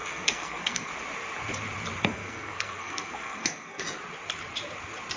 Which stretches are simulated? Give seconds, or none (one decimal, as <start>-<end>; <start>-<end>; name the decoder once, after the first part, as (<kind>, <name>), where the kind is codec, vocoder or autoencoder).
0.0-0.9 (codec, SNAC); 2.0-3.8